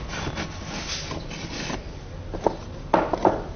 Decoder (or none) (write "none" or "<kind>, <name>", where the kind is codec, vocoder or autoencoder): none